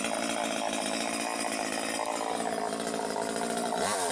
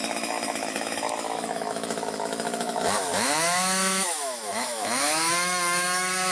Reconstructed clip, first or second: second